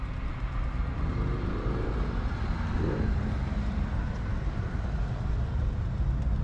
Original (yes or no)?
yes